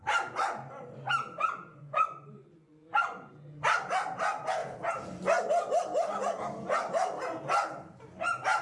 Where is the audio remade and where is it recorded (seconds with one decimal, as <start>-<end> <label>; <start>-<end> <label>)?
0.0-1.7 recorded; 1.7-3.3 remade; 3.3-8.6 recorded